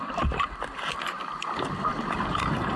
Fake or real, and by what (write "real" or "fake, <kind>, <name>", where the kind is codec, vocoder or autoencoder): real